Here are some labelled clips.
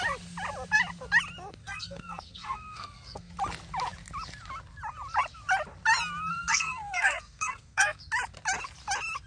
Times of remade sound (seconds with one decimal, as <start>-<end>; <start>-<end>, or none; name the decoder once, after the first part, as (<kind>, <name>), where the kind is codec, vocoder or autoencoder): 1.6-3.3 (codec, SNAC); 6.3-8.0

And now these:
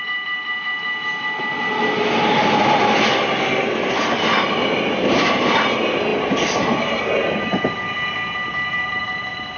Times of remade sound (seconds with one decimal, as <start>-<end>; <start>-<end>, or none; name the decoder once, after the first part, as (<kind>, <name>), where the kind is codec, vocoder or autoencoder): none

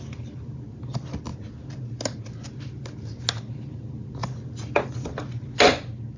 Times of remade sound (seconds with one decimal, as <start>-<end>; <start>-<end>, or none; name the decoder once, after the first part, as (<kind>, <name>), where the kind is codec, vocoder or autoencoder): none

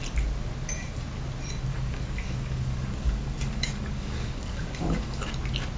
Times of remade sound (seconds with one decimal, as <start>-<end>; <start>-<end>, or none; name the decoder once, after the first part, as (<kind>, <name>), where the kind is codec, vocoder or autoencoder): 1.7-5.2 (codec, DAC)

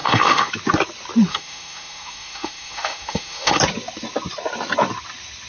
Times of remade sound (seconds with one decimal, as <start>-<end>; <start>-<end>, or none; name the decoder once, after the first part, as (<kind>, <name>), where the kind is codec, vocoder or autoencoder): 0.0-0.5 (autoencoder, DAC-VAE); 1.3-3.6

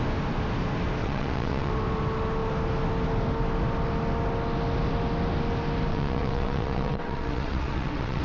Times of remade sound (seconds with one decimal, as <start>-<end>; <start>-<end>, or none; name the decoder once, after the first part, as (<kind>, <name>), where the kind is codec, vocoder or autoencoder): 1.0-1.7 (vocoder, WaveNeXt); 5.9-8.2

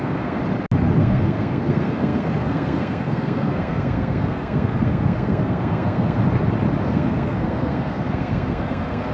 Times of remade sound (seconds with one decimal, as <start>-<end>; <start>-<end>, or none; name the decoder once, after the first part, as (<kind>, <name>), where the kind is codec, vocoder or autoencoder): 0.0-0.4 (codec, SNAC); 1.0-6.2; 6.8-9.1